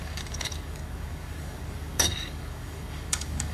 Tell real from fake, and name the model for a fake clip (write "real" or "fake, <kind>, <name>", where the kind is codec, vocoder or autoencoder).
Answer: fake, codec, DAC